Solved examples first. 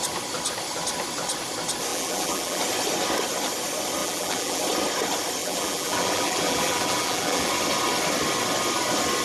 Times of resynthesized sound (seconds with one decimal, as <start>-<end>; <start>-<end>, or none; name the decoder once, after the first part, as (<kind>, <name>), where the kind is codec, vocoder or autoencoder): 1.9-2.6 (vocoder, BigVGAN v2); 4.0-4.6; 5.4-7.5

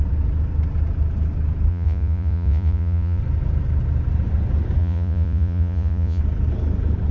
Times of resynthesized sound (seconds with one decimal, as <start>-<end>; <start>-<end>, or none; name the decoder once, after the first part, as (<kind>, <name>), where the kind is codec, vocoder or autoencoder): 1.7-3.2 (vocoder, Vocos); 4.8-6.2

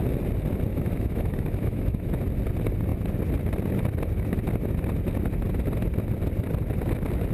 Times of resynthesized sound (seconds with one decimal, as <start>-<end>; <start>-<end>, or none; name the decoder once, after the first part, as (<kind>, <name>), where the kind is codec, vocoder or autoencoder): 0.7-2.2 (autoencoder, DAC-VAE)

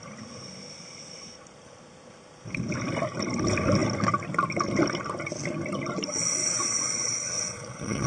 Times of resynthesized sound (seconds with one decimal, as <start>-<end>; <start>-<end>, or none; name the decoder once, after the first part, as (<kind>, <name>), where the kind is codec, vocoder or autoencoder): 6.4-8.1 (vocoder, WaveNeXt)

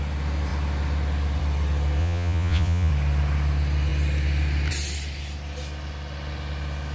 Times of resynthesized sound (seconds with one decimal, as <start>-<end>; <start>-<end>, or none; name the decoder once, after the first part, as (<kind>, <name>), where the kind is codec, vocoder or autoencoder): 2.0-2.9 (vocoder, Vocos)

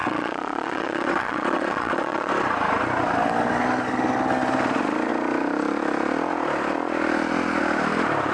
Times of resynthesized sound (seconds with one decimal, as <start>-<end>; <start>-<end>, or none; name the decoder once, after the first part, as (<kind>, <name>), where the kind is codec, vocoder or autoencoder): 0.0-2.3 (vocoder, WaveNeXt)

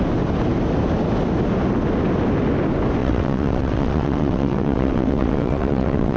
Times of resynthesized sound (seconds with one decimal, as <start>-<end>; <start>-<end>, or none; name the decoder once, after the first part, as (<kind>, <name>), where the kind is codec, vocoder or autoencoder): 3.0-6.2 (vocoder, WaveNeXt)

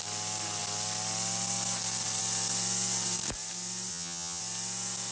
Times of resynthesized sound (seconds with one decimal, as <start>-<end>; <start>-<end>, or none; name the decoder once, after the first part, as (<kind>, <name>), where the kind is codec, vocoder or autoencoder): 3.9-4.4 (vocoder, HiFi-GAN)